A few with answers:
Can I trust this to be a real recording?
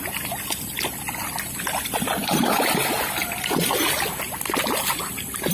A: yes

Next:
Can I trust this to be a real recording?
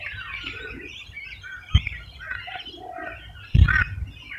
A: yes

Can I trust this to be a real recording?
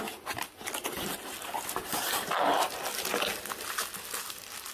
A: yes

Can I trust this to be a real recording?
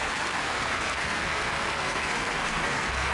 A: no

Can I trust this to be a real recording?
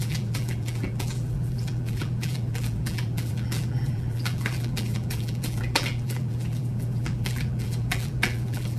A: no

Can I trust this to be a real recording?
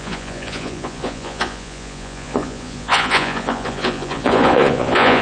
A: no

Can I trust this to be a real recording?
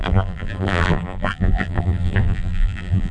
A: no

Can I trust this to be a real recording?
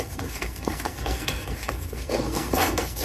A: no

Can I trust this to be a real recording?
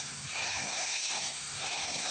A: no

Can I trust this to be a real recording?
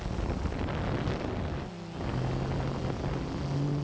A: yes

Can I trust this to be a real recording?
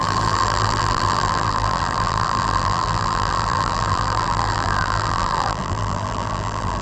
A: no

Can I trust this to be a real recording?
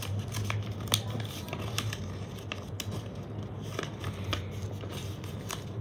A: yes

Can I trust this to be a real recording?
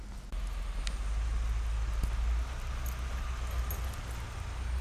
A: yes